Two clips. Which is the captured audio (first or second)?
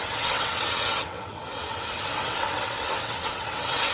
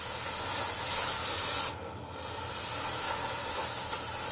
second